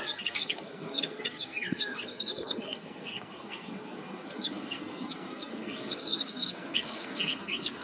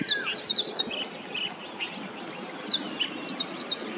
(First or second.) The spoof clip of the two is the first